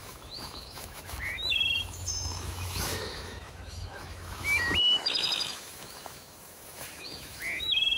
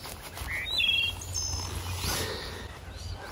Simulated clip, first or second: first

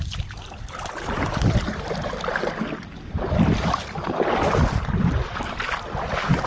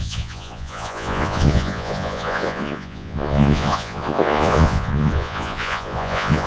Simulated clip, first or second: second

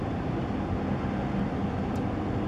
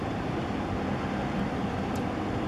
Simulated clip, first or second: second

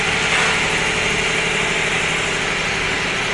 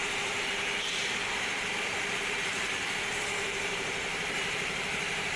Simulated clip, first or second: second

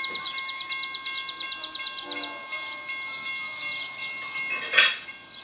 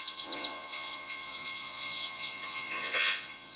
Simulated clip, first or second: second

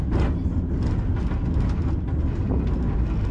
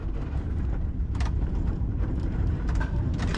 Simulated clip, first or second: second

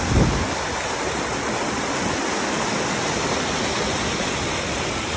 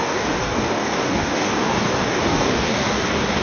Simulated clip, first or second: second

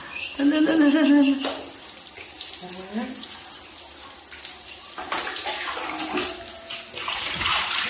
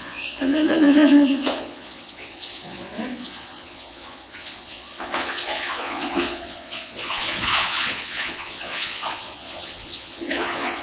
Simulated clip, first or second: second